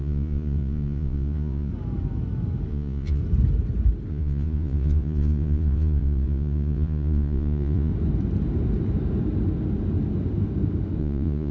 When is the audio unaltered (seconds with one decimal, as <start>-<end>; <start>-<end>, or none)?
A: 1.7-2.7; 3.2-4.1; 7.9-11.0